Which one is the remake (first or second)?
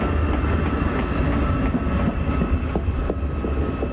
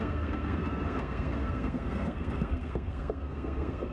second